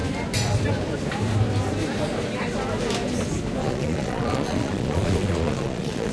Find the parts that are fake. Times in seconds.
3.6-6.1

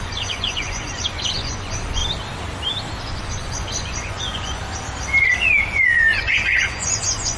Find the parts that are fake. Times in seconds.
0.0-2.0; 3.0-4.6; 5.7-7.4

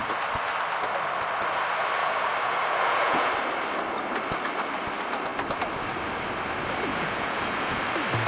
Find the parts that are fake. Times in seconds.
2.0-3.3; 6.9-7.8

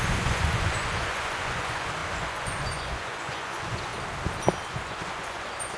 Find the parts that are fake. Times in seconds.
0.0-3.9; 4.7-5.8

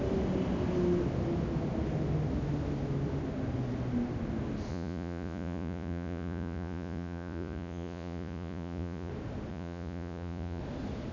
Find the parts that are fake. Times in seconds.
4.7-9.1; 9.5-10.6

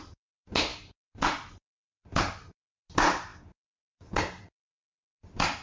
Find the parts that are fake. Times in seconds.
none